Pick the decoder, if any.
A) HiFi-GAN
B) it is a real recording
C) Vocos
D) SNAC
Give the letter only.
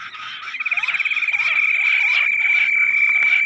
B